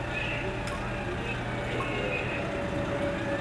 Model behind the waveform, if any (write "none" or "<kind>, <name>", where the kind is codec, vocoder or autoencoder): none